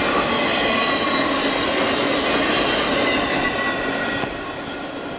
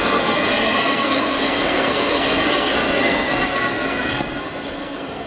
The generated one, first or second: second